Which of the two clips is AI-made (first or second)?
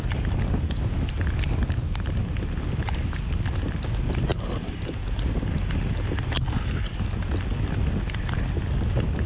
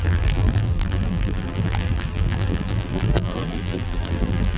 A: second